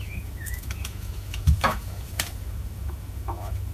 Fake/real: fake